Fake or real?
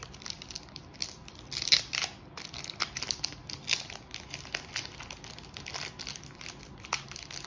real